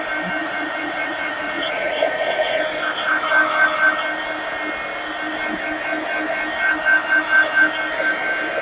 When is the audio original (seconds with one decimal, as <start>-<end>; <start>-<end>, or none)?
0.0-0.4; 2.6-8.6